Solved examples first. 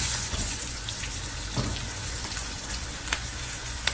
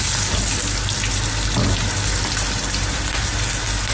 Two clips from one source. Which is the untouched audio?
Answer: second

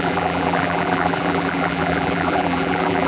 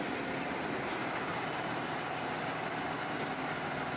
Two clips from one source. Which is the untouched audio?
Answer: second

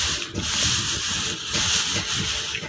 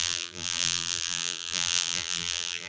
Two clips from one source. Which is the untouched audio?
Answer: first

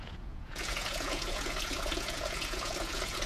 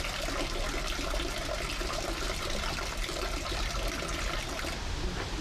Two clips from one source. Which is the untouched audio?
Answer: second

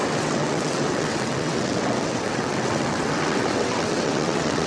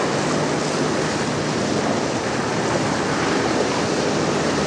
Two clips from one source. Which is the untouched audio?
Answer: second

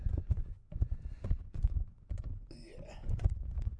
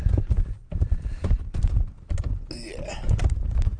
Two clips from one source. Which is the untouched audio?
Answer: second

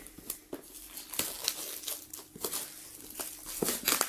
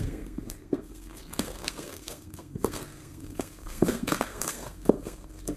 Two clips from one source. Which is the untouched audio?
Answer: first